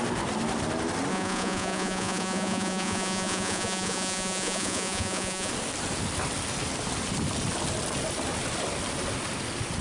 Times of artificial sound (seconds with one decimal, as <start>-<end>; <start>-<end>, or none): 1.1-5.5